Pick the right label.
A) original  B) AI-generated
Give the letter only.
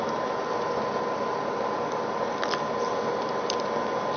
A